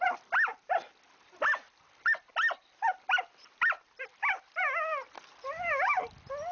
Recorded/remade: recorded